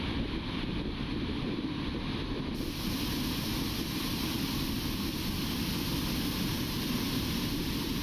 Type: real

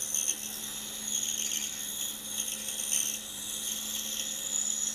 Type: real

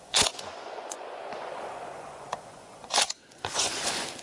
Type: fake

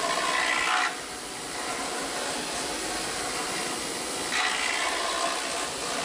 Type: real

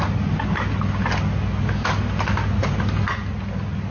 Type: real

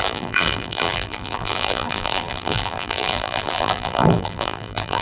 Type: fake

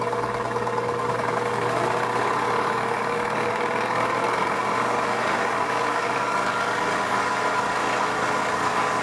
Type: fake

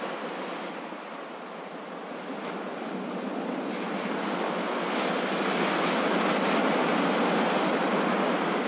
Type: real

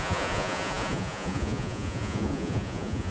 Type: fake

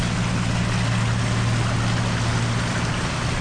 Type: real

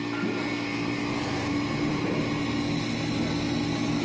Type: real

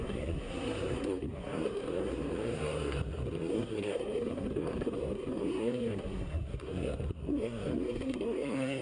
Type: fake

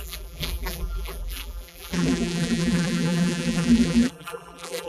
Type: fake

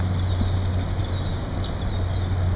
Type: real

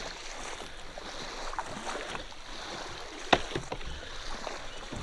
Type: real